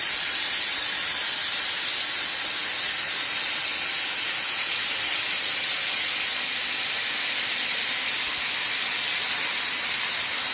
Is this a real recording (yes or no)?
yes